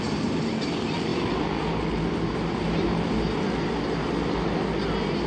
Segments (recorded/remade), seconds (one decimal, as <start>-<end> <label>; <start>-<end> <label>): 0.0-5.3 recorded